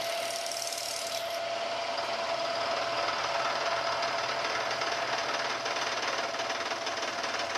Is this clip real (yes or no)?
yes